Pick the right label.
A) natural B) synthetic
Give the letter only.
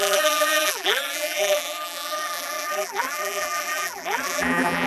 B